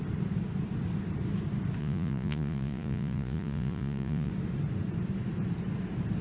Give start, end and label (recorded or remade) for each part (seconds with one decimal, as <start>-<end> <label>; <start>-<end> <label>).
0.0-1.8 recorded; 1.8-4.3 remade; 4.3-6.2 recorded